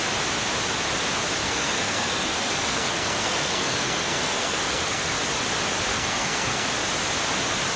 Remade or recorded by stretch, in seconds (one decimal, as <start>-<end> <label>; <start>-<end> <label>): 0.0-1.4 recorded; 1.4-5.2 remade; 5.2-5.9 recorded; 5.9-6.7 remade; 6.7-7.8 recorded

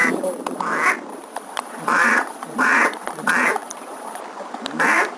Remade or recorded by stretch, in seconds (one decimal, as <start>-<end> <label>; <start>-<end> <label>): 0.0-0.6 remade; 0.6-1.1 recorded; 1.1-4.2 remade; 4.2-5.2 recorded

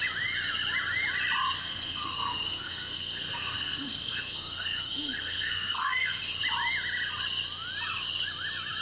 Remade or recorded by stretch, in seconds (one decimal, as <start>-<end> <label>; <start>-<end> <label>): 0.0-1.6 recorded; 1.6-6.2 remade; 6.2-8.8 recorded

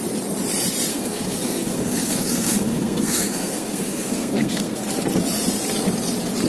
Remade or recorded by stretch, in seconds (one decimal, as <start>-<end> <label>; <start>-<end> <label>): 0.0-0.9 recorded; 0.9-4.8 remade; 4.8-6.5 recorded

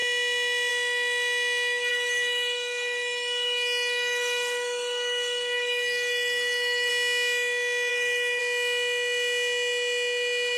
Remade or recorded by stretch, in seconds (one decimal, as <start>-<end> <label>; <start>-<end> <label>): 0.0-1.9 recorded; 1.9-6.9 remade; 6.9-7.9 recorded; 7.9-8.4 remade; 8.4-10.6 recorded

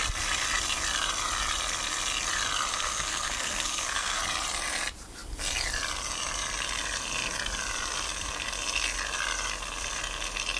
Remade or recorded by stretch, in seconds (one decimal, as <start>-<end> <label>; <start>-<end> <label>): 0.0-2.7 recorded; 2.7-4.2 remade; 4.2-10.6 recorded

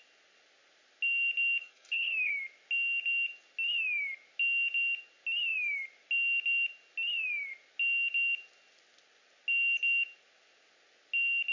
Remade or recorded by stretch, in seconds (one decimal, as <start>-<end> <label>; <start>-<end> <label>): 0.0-1.6 recorded; 1.6-2.3 remade; 2.3-11.5 recorded

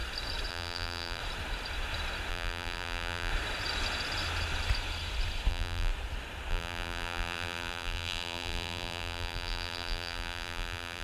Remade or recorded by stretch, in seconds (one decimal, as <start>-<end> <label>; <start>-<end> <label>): 0.0-0.5 recorded; 0.5-1.2 remade; 1.2-2.3 recorded; 2.3-3.3 remade; 3.3-5.5 recorded; 5.5-5.9 remade; 5.9-6.5 recorded; 6.5-11.0 remade